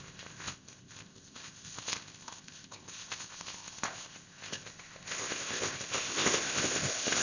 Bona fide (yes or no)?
no